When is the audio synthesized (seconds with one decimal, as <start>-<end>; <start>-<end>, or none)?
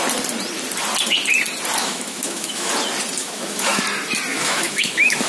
1.8-2.7; 3.2-3.8; 4.3-5.3